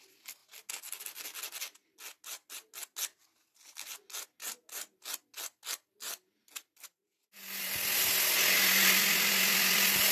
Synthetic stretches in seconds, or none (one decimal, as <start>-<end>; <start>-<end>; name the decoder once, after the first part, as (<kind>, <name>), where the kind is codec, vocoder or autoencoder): none